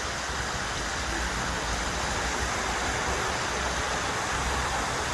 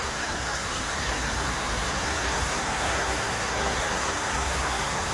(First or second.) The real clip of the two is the first